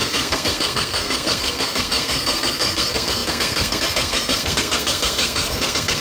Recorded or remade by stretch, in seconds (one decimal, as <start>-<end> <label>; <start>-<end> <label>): 0.0-6.0 remade